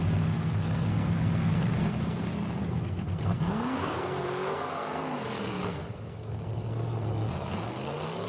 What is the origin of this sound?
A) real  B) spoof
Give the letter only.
B